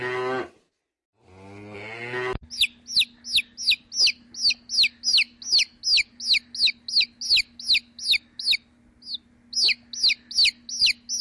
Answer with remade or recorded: recorded